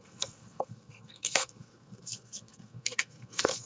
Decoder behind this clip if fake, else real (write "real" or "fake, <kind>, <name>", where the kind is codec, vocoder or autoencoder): fake, codec, SNAC